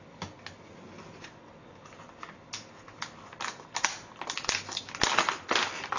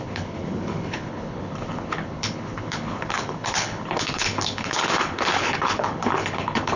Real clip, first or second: first